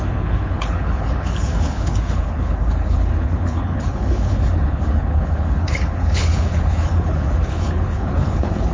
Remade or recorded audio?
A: remade